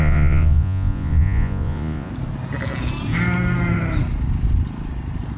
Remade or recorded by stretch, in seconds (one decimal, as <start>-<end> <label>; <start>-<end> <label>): 0.0-2.1 remade; 2.1-5.4 recorded